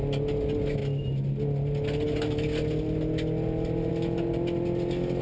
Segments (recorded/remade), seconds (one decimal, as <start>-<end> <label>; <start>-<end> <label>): 0.0-5.2 recorded